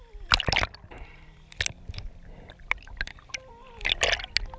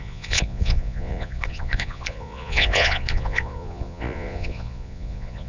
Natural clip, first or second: first